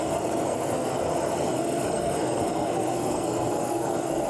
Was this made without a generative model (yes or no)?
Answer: no